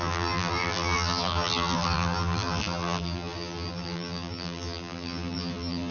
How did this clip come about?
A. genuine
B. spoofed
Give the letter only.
B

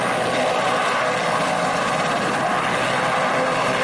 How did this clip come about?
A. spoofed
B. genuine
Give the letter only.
B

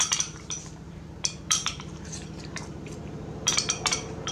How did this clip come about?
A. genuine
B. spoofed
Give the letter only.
B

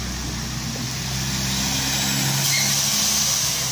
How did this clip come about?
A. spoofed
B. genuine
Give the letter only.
B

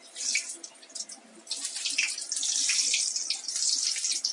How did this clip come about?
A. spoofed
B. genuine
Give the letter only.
A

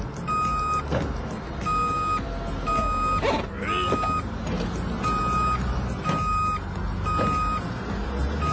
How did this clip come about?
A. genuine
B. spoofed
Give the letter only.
A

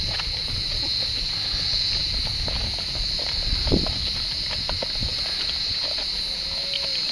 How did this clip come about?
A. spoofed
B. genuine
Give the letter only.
B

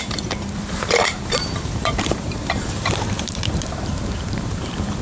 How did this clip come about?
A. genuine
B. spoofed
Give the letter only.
B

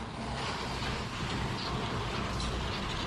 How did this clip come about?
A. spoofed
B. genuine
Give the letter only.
B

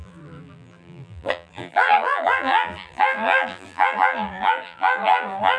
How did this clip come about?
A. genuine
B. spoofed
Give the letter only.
B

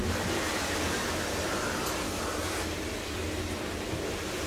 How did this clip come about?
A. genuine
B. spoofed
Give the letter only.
A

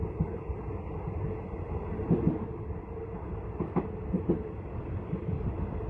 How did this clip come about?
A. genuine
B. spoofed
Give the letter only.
B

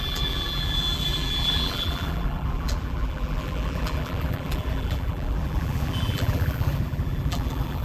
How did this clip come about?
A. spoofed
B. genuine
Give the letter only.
A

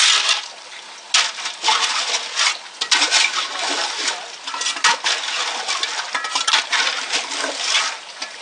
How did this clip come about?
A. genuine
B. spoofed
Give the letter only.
A